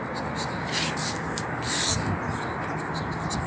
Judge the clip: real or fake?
real